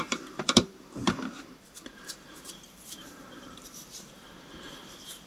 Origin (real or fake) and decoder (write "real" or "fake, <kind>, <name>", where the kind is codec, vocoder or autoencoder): fake, vocoder, BigVGAN v2